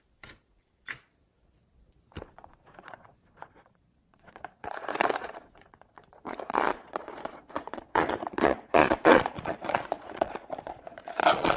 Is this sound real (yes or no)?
no